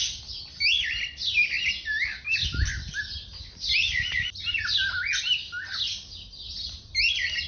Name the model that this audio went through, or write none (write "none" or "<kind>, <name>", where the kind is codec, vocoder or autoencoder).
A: none